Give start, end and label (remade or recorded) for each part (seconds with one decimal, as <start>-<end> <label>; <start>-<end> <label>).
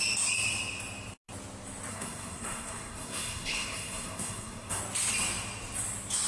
0.0-1.9 recorded; 1.9-4.8 remade; 4.8-6.3 recorded